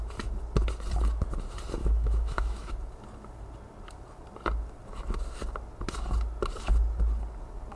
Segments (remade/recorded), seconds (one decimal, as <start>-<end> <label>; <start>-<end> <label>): 0.0-1.8 recorded; 1.8-2.7 remade; 2.7-7.8 recorded